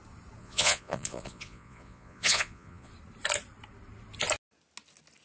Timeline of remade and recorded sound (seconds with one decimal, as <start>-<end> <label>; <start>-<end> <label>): 0.0-0.4 recorded; 0.4-2.9 remade; 2.9-5.2 recorded